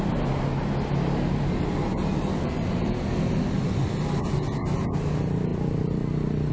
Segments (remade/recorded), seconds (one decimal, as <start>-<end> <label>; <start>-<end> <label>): 0.0-6.5 recorded